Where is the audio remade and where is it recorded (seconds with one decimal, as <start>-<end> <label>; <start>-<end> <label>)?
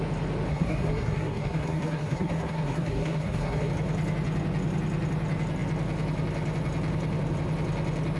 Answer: 0.0-0.5 recorded; 0.5-3.7 remade; 3.7-8.2 recorded